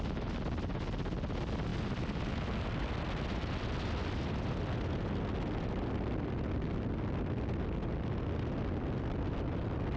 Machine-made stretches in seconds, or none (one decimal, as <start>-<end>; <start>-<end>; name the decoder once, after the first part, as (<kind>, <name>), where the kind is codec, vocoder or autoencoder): none